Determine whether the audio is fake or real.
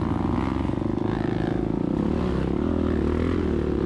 real